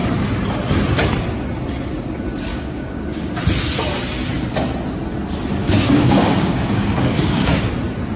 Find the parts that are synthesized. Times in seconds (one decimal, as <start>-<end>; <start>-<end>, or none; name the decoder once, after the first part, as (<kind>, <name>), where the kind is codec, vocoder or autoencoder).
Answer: 2.5-3.3 (codec, DAC); 5.6-7.7